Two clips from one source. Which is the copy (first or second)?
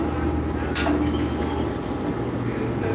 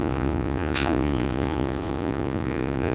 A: second